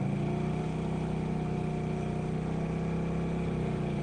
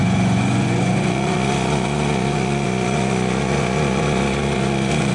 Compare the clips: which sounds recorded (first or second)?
first